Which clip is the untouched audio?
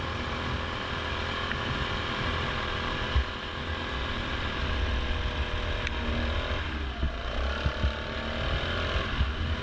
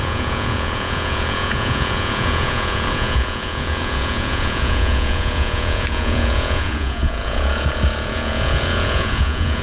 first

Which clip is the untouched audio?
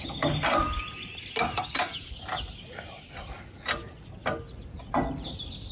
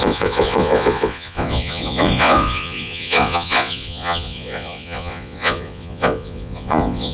first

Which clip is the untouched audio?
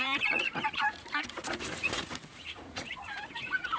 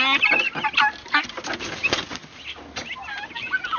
second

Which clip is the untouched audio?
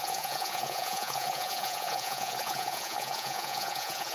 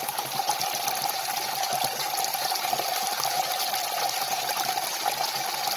second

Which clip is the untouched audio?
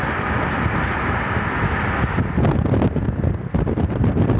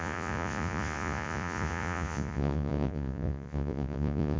first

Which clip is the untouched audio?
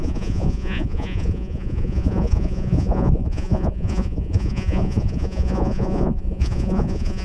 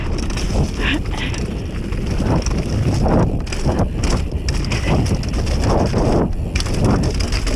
second